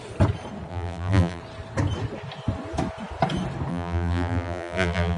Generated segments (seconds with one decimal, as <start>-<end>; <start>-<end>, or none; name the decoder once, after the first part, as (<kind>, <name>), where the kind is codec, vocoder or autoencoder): 0.7-1.4 (vocoder, BigVGAN v2); 3.7-5.2